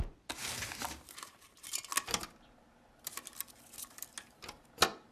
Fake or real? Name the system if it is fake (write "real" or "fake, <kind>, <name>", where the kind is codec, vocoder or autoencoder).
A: real